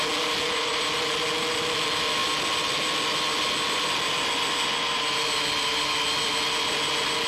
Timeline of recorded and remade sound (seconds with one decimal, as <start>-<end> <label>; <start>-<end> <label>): 0.0-7.3 recorded

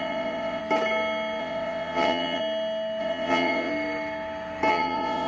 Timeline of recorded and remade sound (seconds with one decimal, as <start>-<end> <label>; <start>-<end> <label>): 0.0-0.6 remade; 0.6-1.4 recorded; 1.4-2.4 remade; 2.4-3.0 recorded; 3.0-3.7 remade; 3.7-4.7 recorded; 4.7-5.3 remade

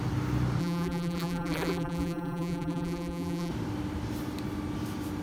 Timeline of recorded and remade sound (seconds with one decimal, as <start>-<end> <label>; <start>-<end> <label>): 0.0-0.6 recorded; 0.6-3.5 remade; 3.5-5.2 recorded

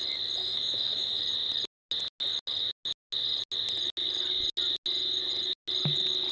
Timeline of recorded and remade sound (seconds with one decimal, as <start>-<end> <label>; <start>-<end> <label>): 0.0-0.4 recorded; 0.4-1.2 remade; 1.2-6.3 recorded

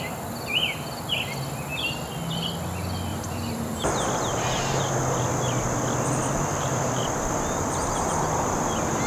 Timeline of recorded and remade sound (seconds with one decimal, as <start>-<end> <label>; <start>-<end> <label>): 0.0-3.1 recorded; 3.1-3.8 remade; 3.8-6.5 recorded; 6.5-7.0 remade; 7.0-9.1 recorded

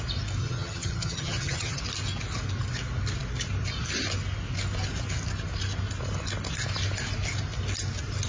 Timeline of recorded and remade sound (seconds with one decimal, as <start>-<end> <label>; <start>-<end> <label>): 0.0-0.4 recorded; 0.4-1.8 remade; 1.8-8.3 recorded

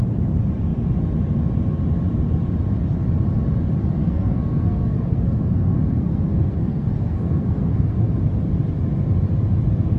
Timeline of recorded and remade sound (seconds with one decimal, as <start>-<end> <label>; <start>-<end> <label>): 0.0-4.0 recorded; 4.0-8.2 remade; 8.2-10.0 recorded